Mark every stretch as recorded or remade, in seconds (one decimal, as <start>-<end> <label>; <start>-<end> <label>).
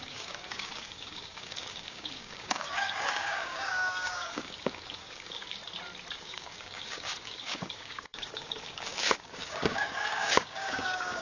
0.0-5.6 remade; 5.6-6.2 recorded; 6.2-11.2 remade